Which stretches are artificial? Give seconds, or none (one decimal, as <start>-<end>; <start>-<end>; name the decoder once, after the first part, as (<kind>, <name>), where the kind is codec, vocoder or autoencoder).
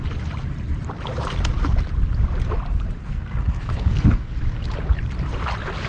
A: 3.0-4.3 (codec, SNAC)